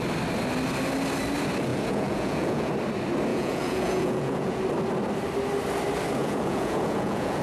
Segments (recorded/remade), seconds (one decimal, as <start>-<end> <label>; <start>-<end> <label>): 0.0-1.7 recorded; 1.7-2.7 remade; 2.7-3.3 recorded; 3.3-4.6 remade; 4.6-6.2 recorded; 6.2-7.4 remade